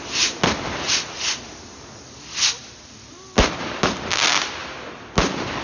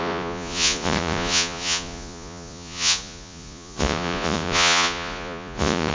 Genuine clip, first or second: first